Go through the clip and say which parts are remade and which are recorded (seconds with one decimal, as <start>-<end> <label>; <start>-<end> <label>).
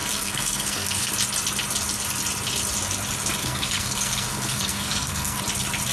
0.0-1.1 remade; 1.1-3.4 recorded; 3.4-5.4 remade; 5.4-5.9 recorded